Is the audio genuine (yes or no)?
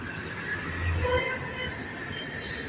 yes